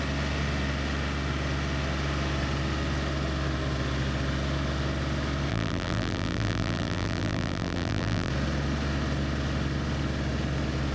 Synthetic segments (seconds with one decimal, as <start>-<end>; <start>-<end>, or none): 5.5-8.3